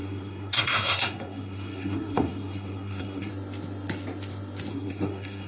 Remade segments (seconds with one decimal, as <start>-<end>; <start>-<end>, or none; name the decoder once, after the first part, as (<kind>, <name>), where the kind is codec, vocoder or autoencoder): 0.0-3.3 (codec, SNAC); 4.7-5.5